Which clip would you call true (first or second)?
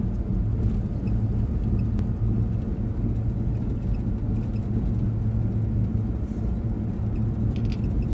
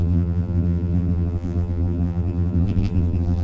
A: first